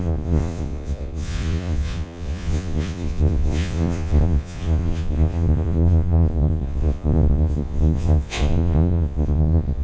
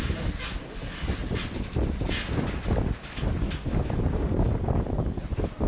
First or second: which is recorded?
second